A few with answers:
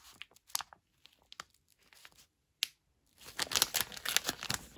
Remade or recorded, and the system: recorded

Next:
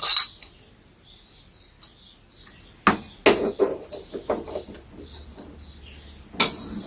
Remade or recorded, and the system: recorded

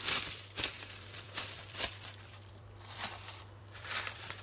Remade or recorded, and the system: remade, vocoder, BigVGAN v2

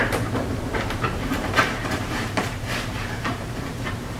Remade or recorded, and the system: remade, vocoder, BigVGAN v2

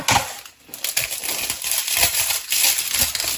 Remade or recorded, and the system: recorded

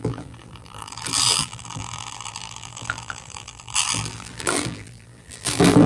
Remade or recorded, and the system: remade, vocoder, BigVGAN v2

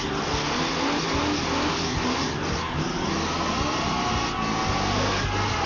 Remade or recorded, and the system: recorded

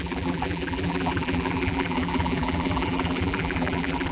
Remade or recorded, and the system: remade, vocoder, BigVGAN v2